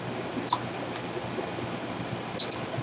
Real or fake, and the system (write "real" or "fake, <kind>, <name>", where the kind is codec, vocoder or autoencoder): real